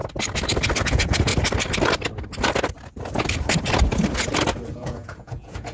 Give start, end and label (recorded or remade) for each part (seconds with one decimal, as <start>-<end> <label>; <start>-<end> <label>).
0.0-0.8 recorded; 0.8-1.3 remade; 1.3-4.7 recorded; 4.7-5.7 remade

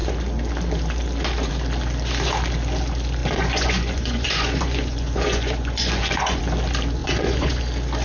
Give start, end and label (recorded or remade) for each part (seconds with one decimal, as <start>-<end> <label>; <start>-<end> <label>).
0.0-3.2 recorded; 3.2-6.4 remade; 6.4-7.0 recorded; 7.0-7.6 remade; 7.6-8.0 recorded

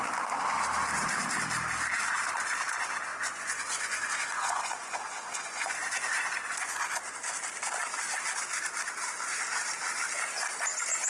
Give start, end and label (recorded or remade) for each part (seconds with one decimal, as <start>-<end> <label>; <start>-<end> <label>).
0.0-3.1 recorded; 3.1-7.0 remade; 7.0-11.1 recorded